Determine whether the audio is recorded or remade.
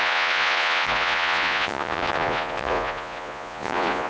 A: remade